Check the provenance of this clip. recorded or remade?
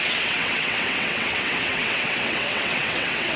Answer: remade